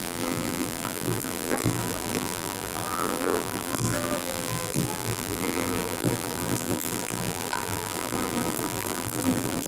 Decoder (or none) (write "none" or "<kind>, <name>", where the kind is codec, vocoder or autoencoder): vocoder, BigVGAN v2